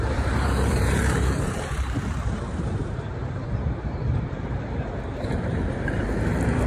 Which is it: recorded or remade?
remade